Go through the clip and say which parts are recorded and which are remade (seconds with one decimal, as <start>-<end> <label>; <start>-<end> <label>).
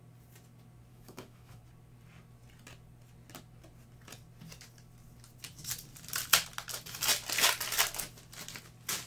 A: 0.0-0.9 recorded; 0.9-1.6 remade; 1.6-9.1 recorded